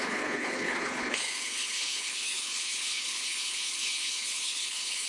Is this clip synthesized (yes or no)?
yes